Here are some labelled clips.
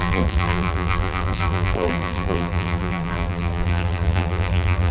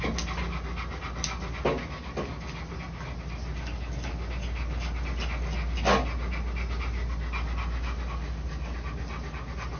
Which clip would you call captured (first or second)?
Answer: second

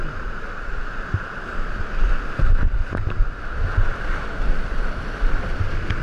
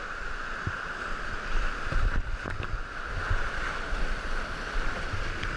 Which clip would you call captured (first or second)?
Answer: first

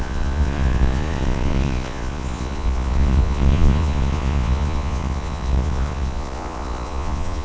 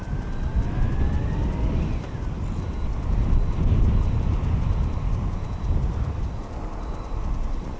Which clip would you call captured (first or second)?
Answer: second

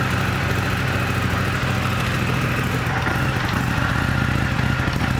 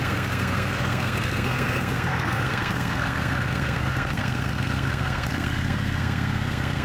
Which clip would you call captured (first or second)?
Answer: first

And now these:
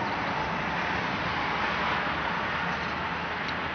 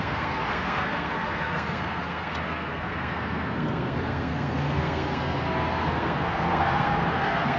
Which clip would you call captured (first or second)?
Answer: first